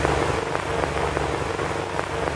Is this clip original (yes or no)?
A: yes